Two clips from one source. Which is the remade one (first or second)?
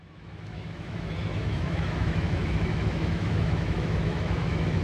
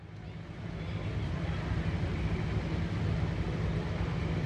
first